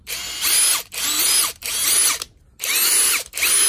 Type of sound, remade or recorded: recorded